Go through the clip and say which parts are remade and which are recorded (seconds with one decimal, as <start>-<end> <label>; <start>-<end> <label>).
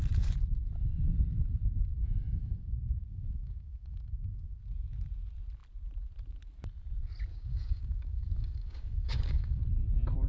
0.0-1.9 recorded; 1.9-4.6 remade; 4.6-7.3 recorded; 7.3-9.6 remade; 9.6-10.3 recorded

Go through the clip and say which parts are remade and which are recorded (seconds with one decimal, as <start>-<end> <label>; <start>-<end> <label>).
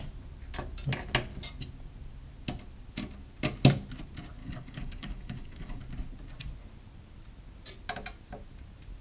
0.0-4.4 recorded; 4.4-5.8 remade; 5.8-9.0 recorded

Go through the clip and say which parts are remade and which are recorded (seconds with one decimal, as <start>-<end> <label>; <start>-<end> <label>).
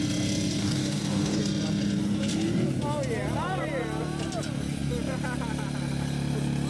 0.0-0.6 recorded; 0.6-1.4 remade; 1.4-6.7 recorded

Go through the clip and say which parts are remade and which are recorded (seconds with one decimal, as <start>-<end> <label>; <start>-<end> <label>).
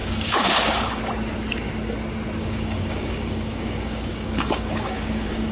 0.0-1.0 remade; 1.0-2.4 recorded; 2.4-5.5 remade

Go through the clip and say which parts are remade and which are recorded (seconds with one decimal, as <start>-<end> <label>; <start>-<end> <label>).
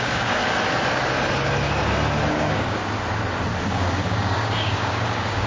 0.0-0.4 remade; 0.4-2.3 recorded; 2.3-2.8 remade; 2.8-3.6 recorded; 3.6-5.5 remade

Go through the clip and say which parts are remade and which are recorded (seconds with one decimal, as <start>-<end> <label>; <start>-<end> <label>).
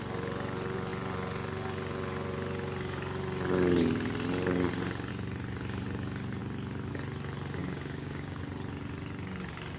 0.0-7.6 recorded; 7.6-8.4 remade; 8.4-9.8 recorded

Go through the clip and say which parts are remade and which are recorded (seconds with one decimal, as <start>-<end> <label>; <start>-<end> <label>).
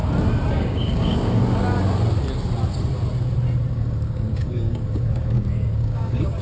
0.0-0.5 recorded; 0.5-1.4 remade; 1.4-3.7 recorded; 3.7-6.4 remade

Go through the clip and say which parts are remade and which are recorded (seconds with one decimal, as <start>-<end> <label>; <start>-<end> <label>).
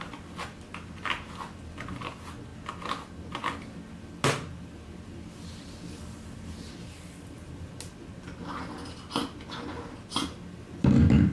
0.0-11.3 recorded